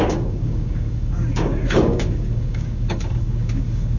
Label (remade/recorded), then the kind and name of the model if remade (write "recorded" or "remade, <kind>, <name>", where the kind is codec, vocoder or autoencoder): remade, codec, DAC